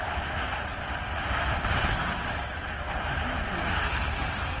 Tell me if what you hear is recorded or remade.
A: recorded